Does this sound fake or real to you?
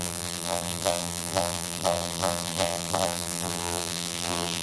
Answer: fake